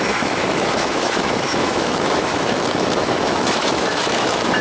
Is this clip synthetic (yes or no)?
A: yes